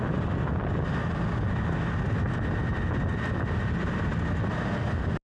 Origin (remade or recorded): recorded